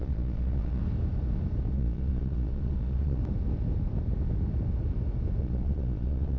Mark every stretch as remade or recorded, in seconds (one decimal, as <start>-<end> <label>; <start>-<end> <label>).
0.0-0.8 remade; 0.8-1.7 recorded; 1.7-3.2 remade; 3.2-5.4 recorded; 5.4-6.4 remade